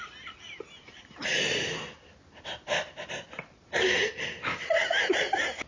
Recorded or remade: recorded